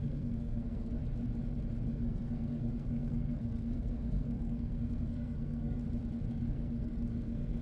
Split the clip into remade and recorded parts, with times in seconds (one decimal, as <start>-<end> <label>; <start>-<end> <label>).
0.0-1.0 remade; 1.0-1.9 recorded; 1.9-5.8 remade; 5.8-6.3 recorded; 6.3-7.6 remade